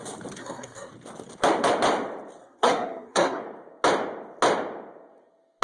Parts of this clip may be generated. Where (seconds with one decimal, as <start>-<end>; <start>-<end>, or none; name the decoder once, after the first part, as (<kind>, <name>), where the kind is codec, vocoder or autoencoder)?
0.4-0.9 (codec, SNAC); 2.4-3.4